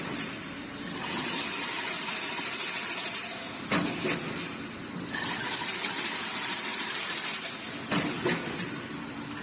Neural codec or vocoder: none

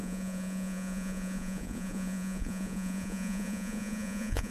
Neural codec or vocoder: vocoder, Vocos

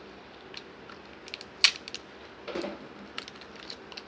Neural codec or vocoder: none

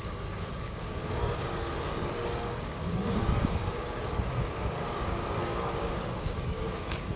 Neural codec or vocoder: codec, DAC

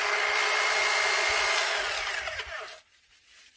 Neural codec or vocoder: none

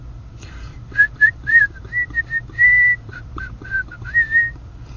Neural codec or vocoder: vocoder, BigVGAN v2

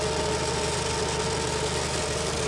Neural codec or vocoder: none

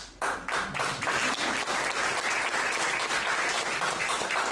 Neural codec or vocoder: none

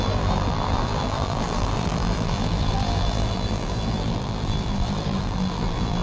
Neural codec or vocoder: vocoder, BigVGAN v2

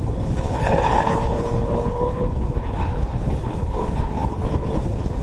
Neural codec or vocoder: codec, HILCodec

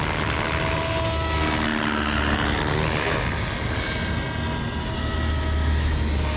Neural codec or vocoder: none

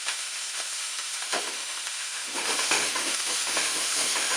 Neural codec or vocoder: autoencoder, DAC-VAE